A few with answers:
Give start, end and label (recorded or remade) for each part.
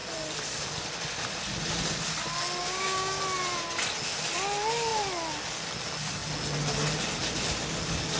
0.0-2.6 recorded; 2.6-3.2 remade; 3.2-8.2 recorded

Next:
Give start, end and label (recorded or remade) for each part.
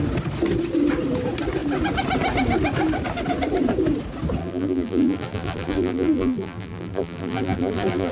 0.0-4.4 recorded; 4.4-8.1 remade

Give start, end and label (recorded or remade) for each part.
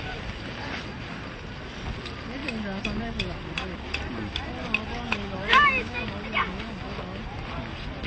0.0-5.5 recorded; 5.5-6.0 remade; 6.0-8.1 recorded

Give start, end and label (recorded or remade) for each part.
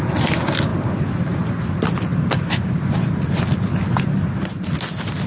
0.0-5.3 recorded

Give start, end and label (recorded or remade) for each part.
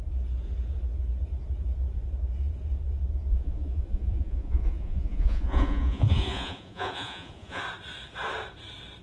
0.0-3.3 recorded; 3.3-7.6 remade; 7.6-9.0 recorded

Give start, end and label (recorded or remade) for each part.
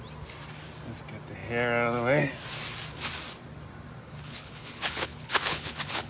0.0-4.0 recorded; 4.0-6.1 remade